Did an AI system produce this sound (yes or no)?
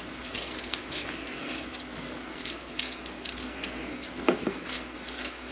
yes